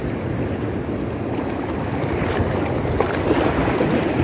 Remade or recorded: recorded